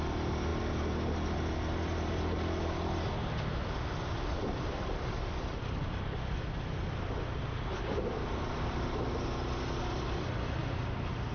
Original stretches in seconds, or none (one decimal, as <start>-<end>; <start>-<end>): 0.0-11.3